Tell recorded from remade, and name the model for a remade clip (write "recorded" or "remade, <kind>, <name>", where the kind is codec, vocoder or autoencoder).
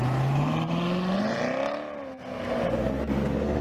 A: recorded